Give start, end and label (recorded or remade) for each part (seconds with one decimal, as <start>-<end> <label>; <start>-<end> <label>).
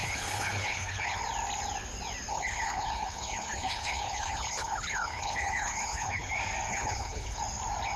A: 0.0-1.2 remade; 1.2-2.3 recorded; 2.3-6.3 remade; 6.3-6.7 recorded; 6.7-7.4 remade; 7.4-8.0 recorded